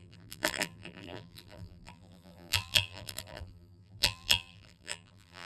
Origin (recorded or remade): remade